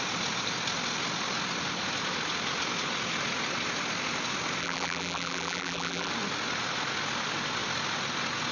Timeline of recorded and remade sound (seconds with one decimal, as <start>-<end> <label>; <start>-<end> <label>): 0.0-4.6 recorded; 4.6-6.1 remade; 6.1-8.5 recorded